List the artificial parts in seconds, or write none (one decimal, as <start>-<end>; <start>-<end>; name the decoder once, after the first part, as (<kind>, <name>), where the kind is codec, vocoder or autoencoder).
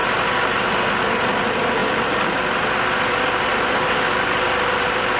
none